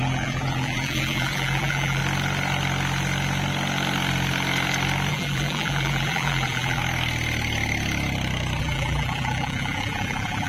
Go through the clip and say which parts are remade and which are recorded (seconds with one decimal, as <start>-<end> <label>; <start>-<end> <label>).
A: 0.0-2.0 remade; 2.0-5.1 recorded; 5.1-6.8 remade; 6.8-8.6 recorded; 8.6-10.5 remade